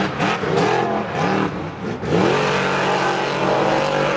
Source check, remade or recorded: recorded